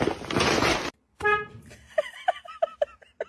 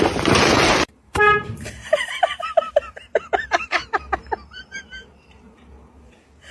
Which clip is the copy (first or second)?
second